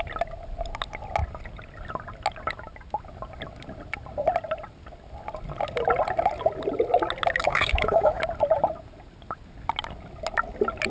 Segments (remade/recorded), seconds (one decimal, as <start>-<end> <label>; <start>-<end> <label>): 0.0-7.4 recorded; 7.4-8.2 remade; 8.2-10.9 recorded